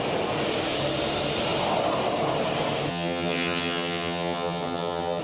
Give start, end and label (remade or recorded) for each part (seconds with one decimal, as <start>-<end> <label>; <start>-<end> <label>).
0.0-2.9 recorded; 2.9-5.2 remade